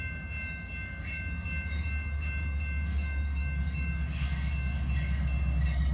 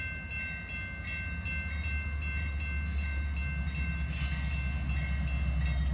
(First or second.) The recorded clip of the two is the second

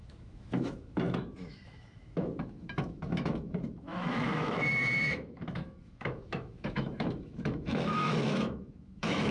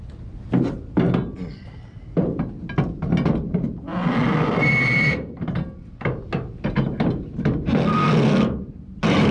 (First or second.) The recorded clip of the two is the second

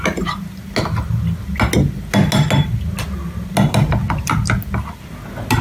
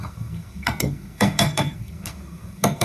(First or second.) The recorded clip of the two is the first